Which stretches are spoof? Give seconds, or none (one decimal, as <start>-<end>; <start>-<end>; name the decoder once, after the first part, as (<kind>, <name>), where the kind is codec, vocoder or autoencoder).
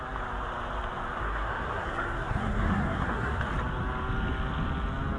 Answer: 1.2-3.4 (codec, SNAC)